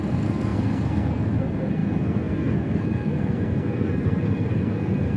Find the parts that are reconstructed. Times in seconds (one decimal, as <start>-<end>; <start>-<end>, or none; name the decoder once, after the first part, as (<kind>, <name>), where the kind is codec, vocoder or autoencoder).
0.0-5.2 (codec, SNAC)